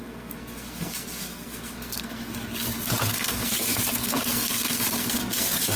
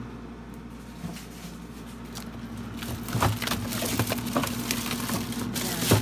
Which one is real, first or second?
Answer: second